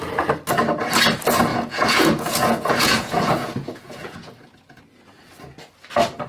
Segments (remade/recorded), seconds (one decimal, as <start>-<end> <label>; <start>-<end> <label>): 0.0-1.5 recorded; 1.5-4.8 remade; 4.8-6.3 recorded